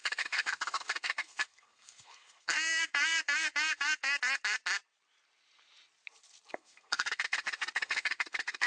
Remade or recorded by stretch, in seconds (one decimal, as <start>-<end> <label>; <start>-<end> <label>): 0.0-4.2 remade; 4.2-6.5 recorded; 6.5-8.7 remade